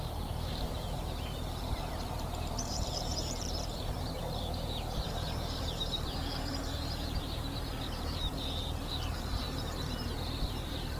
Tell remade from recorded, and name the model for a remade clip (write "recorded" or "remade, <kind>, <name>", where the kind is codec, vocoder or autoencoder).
remade, vocoder, BigVGAN v2